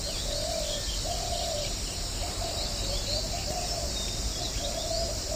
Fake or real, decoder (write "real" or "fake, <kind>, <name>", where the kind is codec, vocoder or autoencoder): real